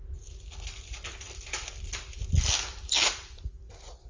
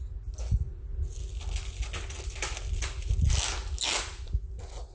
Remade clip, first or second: first